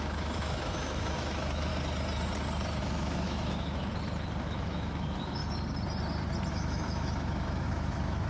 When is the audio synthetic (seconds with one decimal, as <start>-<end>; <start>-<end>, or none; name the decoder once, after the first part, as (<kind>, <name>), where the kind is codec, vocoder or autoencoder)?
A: 0.0-1.7 (autoencoder, DAC-VAE); 2.8-3.9; 4.4-5.4; 6.5-8.3